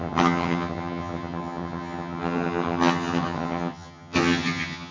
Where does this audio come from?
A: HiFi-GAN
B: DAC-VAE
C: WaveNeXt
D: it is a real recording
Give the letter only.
A